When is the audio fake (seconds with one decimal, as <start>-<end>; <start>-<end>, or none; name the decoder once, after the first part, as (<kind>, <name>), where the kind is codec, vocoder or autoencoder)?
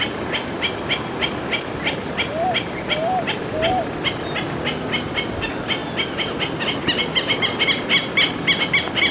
none